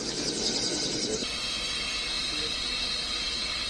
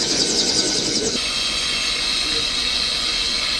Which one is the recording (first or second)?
first